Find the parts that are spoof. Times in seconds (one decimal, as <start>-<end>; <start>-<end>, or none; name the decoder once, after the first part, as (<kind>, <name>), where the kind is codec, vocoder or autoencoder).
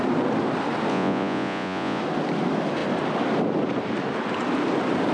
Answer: 0.9-2.0 (vocoder, Vocos)